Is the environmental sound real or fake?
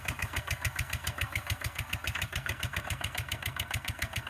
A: fake